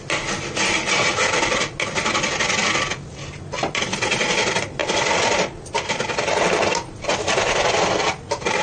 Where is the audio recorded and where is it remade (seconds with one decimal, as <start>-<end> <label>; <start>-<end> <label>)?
0.0-8.6 recorded